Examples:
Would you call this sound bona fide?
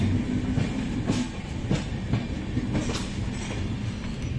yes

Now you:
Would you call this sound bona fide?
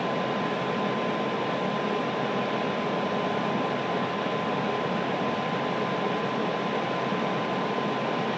yes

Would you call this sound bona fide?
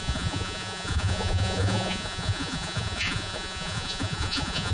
no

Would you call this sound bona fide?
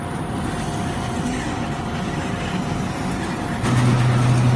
yes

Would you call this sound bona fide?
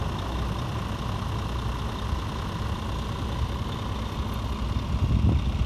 yes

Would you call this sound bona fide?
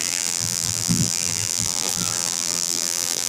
no